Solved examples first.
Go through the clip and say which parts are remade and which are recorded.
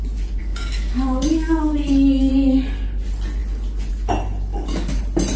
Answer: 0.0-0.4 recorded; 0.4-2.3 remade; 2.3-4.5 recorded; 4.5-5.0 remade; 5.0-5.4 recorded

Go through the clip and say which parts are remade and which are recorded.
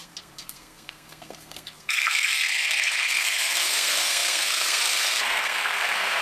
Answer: 0.0-6.2 remade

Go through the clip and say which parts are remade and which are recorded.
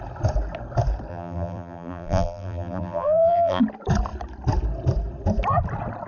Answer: 0.0-1.1 recorded; 1.1-3.6 remade; 3.6-6.1 recorded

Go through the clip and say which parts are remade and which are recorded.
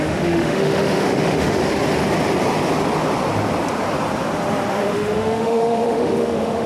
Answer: 0.0-1.6 remade; 1.6-4.7 recorded; 4.7-6.7 remade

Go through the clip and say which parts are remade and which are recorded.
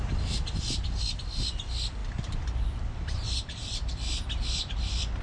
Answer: 0.0-2.0 recorded; 2.0-5.2 remade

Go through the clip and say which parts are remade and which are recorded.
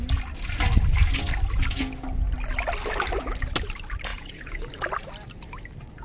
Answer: 0.0-4.1 recorded; 4.1-4.7 remade; 4.7-6.0 recorded